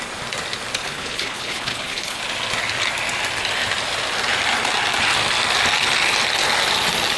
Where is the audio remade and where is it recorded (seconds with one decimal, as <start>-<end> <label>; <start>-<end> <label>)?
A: 0.0-0.8 recorded; 0.8-2.2 remade; 2.2-7.2 recorded